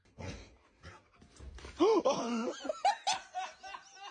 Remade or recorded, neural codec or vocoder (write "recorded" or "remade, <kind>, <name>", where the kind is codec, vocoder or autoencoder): recorded